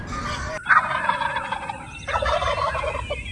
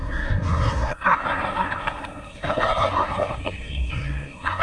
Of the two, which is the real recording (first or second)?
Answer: first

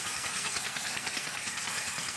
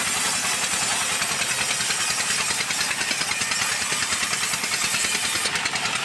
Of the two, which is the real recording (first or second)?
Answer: second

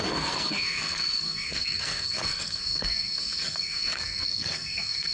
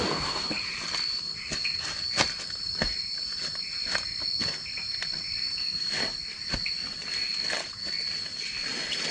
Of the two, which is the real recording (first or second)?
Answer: second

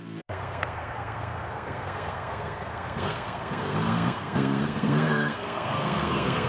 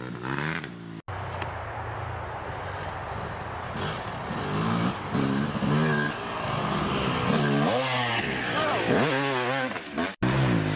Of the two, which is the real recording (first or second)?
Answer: second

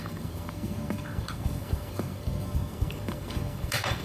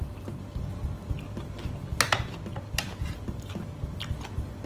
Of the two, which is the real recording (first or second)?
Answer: second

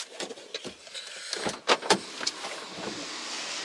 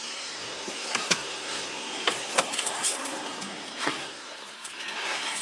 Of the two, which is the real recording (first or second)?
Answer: first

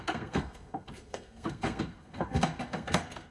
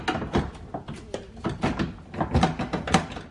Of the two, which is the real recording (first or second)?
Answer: second